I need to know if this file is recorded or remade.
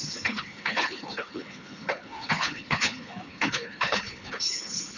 remade